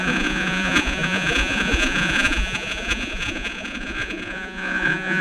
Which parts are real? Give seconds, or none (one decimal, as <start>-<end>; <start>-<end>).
none